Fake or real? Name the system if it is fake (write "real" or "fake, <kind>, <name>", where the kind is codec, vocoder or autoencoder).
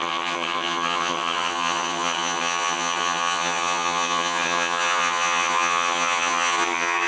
fake, vocoder, HiFi-GAN